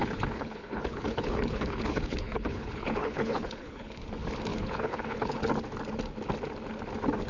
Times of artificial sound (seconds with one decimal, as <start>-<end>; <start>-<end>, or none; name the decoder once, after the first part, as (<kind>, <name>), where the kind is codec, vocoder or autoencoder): 0.0-4.0 (codec, HILCodec); 4.5-5.4